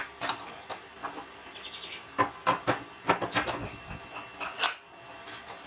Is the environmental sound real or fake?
real